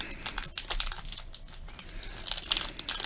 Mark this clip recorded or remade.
recorded